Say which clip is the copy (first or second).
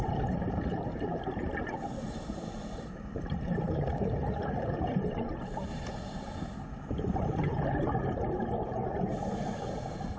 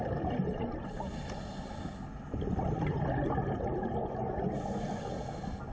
first